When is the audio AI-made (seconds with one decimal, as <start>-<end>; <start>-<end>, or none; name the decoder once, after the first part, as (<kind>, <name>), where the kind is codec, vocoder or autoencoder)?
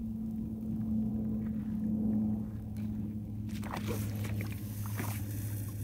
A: 0.0-1.1 (codec, DAC); 1.6-3.5; 4.6-5.2